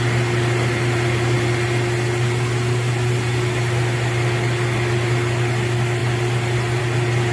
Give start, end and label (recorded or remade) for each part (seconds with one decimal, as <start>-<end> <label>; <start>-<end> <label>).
0.0-7.3 recorded

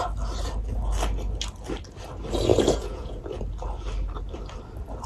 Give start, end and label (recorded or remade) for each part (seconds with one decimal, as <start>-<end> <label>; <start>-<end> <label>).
0.0-2.5 recorded; 2.5-3.2 remade; 3.2-5.1 recorded

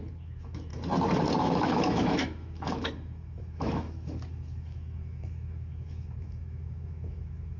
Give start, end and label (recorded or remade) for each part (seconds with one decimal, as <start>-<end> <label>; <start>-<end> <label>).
0.0-0.7 remade; 0.7-1.4 recorded; 1.4-7.6 remade

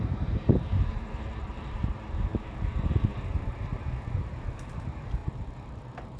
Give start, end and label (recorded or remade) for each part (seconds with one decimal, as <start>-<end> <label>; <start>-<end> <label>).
0.0-6.2 remade

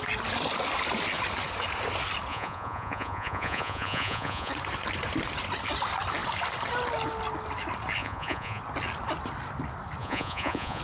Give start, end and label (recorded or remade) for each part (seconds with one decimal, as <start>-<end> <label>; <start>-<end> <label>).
0.0-2.3 recorded; 2.3-4.5 remade; 4.5-8.0 recorded; 8.0-8.6 remade; 8.6-10.0 recorded; 10.0-10.8 remade

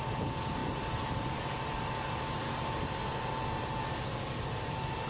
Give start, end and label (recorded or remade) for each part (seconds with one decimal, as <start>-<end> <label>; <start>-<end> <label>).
0.0-5.1 recorded

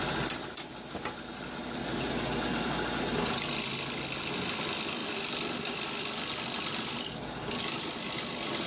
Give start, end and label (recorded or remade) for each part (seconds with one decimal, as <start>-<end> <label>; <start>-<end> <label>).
0.0-8.7 recorded